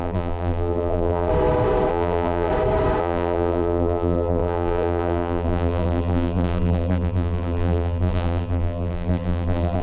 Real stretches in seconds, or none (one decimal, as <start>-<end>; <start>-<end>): 1.3-1.9; 2.5-3.0